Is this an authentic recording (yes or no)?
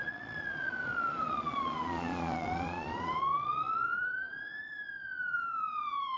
no